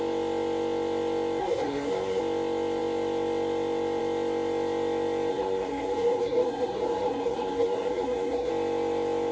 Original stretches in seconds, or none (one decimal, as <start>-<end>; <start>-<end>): 0.0-1.4; 2.2-5.3; 8.5-9.3